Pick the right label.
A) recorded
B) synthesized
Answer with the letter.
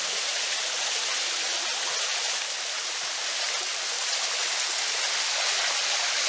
A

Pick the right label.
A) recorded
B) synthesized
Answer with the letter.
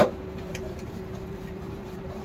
B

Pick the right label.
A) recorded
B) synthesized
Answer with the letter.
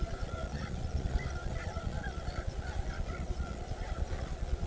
B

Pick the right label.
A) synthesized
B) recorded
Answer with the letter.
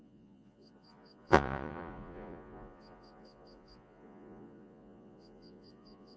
A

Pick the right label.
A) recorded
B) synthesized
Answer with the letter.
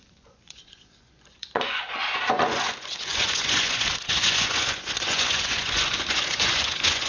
B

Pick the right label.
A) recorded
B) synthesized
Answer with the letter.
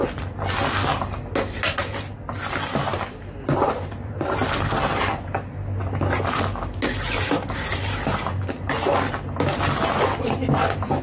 A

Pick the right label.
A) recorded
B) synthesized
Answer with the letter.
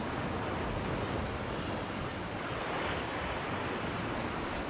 A